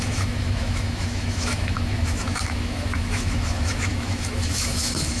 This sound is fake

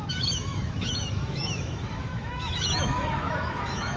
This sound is fake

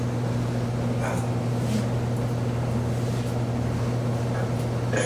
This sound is real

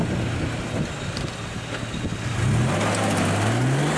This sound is real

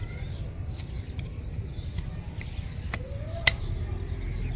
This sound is real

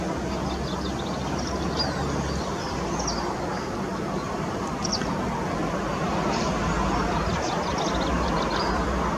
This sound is real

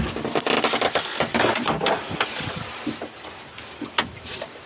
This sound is real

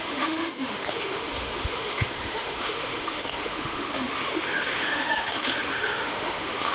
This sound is fake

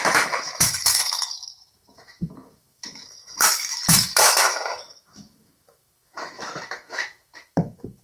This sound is fake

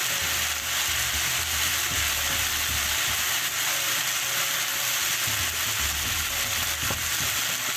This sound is real